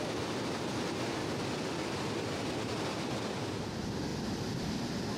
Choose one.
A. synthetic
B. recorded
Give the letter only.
B